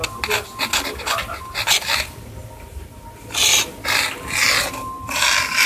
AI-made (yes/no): no